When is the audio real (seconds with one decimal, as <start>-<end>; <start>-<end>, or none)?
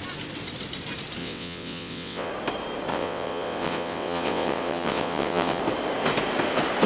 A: 0.0-1.2; 2.3-2.9; 5.6-6.9